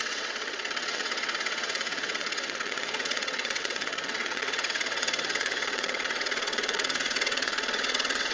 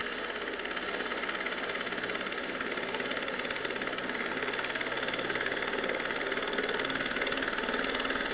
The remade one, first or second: first